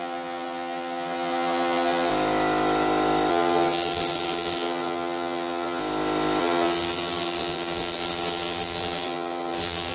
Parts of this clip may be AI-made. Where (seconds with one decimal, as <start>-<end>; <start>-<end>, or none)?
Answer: 0.0-2.1; 3.3-5.8; 6.4-9.9